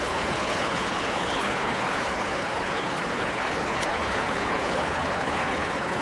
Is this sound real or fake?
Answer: fake